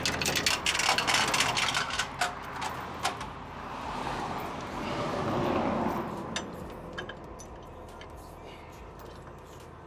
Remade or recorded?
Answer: recorded